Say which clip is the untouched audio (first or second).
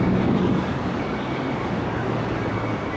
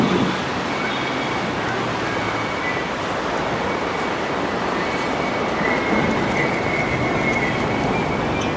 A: second